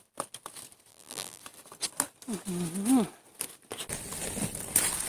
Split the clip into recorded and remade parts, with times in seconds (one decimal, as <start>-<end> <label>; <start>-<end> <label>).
0.0-0.9 recorded; 0.9-1.4 remade; 1.4-5.1 recorded